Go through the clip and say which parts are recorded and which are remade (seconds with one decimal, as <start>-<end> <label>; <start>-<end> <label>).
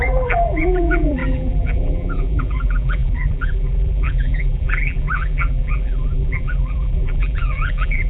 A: 0.0-8.1 remade